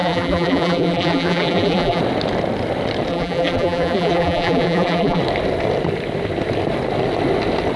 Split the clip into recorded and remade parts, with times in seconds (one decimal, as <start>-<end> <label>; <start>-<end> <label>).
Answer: 0.0-2.0 remade; 2.0-3.1 recorded; 3.1-5.2 remade; 5.2-7.8 recorded